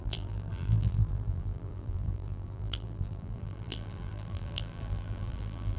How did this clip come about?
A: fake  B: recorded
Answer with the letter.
A